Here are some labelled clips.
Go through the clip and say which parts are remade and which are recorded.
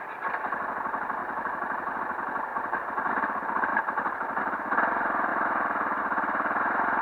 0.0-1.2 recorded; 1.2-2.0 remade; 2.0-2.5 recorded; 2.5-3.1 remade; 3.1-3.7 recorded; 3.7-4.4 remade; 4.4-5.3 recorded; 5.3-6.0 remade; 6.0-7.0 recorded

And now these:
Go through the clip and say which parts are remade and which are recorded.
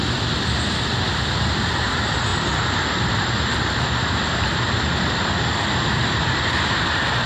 0.0-2.3 recorded; 2.3-6.7 remade; 6.7-7.3 recorded